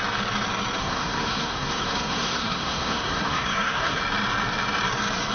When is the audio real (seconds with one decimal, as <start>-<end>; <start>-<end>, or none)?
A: 0.0-0.8; 4.0-5.3